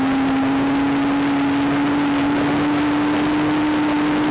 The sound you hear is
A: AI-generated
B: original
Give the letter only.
B